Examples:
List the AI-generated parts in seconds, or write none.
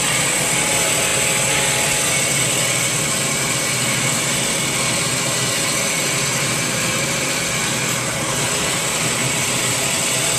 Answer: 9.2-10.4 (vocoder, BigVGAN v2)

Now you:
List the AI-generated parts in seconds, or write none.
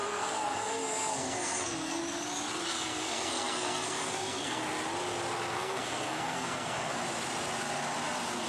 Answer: 0.0-2.0 (codec, SNAC); 2.7-4.6; 5.5-7.0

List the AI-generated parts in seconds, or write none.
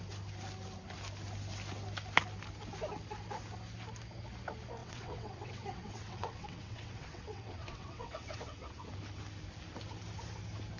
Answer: 4.8-8.8 (vocoder, WaveNeXt)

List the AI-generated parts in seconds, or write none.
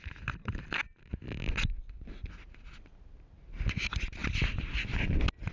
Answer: none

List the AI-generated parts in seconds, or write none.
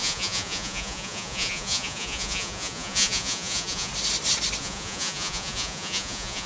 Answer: 0.0-3.9 (vocoder, Vocos); 4.6-6.5